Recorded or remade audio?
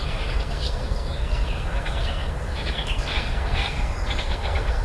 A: remade